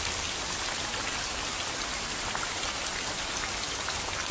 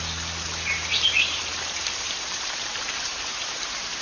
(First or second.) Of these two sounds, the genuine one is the first